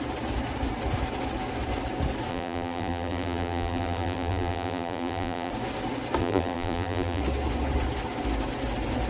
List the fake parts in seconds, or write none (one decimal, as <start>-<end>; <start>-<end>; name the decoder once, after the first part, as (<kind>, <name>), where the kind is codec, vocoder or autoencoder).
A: 2.3-5.5 (vocoder, BigVGAN v2); 6.2-7.2